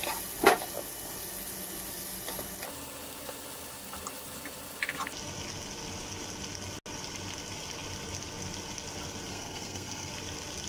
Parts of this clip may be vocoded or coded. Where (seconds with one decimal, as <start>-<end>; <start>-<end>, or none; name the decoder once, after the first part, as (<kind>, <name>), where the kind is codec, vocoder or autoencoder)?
9.3-10.1 (codec, SNAC)